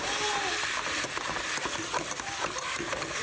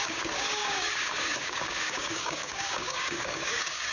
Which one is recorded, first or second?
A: first